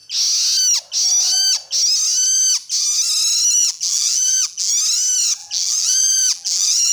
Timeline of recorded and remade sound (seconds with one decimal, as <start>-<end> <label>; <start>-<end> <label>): 0.0-3.6 recorded; 3.6-4.7 remade; 4.7-5.4 recorded; 5.4-6.9 remade